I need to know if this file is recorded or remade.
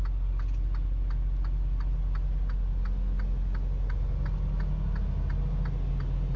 recorded